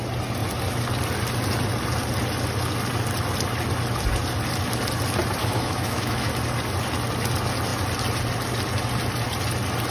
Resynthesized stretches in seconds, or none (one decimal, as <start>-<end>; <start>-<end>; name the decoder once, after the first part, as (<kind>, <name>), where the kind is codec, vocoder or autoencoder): 5.4-6.3 (autoencoder, DAC-VAE)